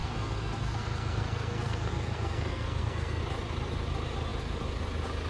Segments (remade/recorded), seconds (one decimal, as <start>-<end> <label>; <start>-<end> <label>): 0.0-3.2 remade; 3.2-5.3 recorded